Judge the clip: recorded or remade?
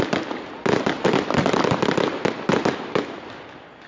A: recorded